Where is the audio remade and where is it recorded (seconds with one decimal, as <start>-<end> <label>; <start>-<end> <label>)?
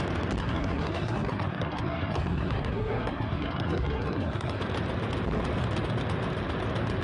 0.0-0.4 recorded; 0.4-4.6 remade; 4.6-7.0 recorded